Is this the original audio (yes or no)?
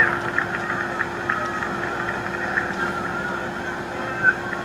yes